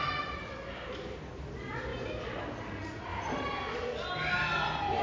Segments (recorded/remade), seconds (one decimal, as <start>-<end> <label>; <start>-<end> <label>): 0.0-1.9 recorded; 1.9-2.6 remade; 2.6-5.0 recorded